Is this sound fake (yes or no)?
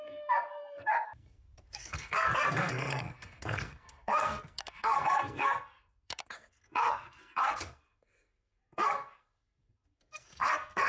yes